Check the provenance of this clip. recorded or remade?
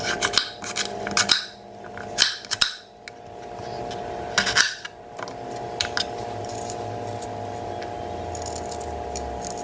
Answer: recorded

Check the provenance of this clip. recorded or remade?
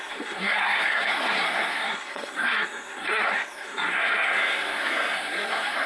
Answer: remade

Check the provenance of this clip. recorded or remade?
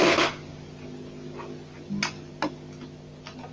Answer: recorded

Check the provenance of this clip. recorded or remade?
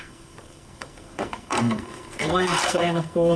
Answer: remade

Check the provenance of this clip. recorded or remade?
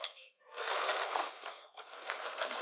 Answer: remade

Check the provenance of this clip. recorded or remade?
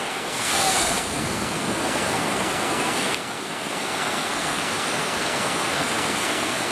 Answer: remade